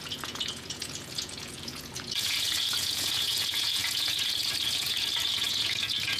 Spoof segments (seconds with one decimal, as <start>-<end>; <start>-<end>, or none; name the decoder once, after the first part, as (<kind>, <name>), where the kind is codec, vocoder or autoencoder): 0.0-6.2 (vocoder, Vocos)